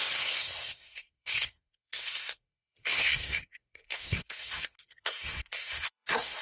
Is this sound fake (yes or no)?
yes